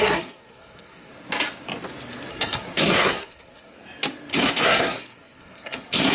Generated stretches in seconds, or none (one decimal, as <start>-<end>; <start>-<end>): 0.0-1.1; 2.3-3.7; 4.3-6.1